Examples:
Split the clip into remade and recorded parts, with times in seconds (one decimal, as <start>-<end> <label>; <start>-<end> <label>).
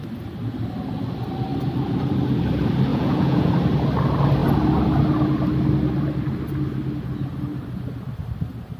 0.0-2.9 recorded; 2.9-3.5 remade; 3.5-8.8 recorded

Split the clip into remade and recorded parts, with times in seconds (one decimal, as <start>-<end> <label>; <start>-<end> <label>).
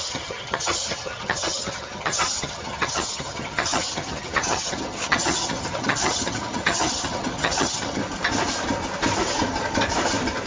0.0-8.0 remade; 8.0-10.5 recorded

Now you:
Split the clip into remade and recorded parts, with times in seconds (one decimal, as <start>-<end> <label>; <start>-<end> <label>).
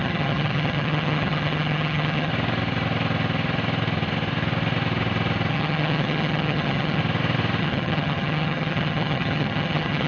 0.0-2.3 remade; 2.3-5.5 recorded; 5.5-7.0 remade; 7.0-7.6 recorded; 7.6-10.1 remade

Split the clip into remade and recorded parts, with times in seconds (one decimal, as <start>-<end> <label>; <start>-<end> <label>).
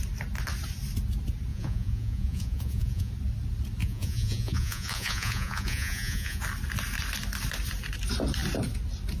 0.0-1.5 recorded; 1.5-3.1 remade; 3.1-3.8 recorded; 3.8-6.4 remade; 6.4-9.2 recorded